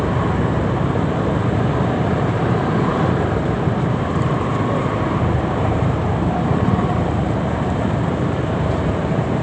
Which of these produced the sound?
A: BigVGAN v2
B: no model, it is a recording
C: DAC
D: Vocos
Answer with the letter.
A